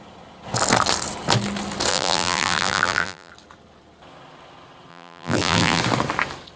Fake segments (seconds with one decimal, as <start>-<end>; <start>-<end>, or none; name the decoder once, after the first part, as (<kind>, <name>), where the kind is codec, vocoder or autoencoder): 1.9-3.3 (vocoder, BigVGAN v2); 4.9-5.8